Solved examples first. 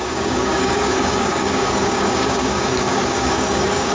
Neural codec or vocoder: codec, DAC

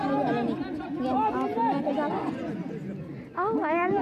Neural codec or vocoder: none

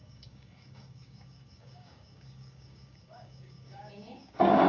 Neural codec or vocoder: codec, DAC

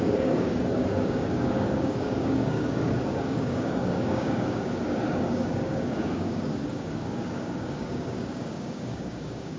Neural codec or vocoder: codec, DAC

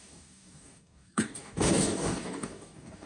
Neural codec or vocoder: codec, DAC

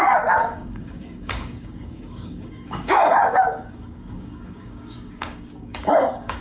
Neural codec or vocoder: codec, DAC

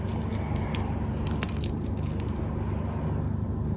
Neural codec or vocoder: none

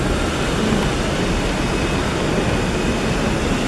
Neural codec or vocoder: none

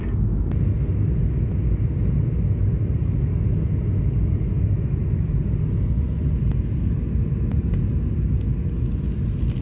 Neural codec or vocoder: none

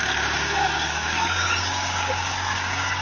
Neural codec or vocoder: codec, DAC